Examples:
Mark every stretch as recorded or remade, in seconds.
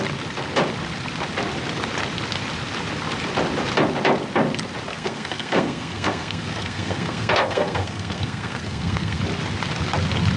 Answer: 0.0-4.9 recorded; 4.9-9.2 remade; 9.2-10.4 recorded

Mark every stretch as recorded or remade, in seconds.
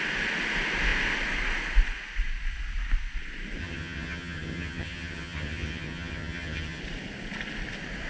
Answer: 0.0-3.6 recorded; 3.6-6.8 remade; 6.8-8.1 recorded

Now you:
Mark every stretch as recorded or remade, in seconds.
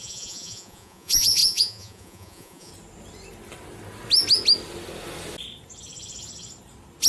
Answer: 0.0-2.7 remade; 2.7-7.1 recorded